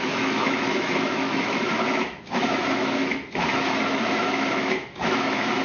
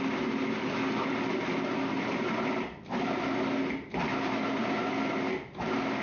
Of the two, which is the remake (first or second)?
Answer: first